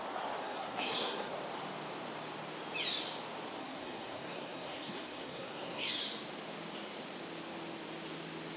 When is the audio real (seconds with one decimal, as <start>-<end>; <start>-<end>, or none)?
0.0-0.4; 1.3-3.6; 6.0-8.6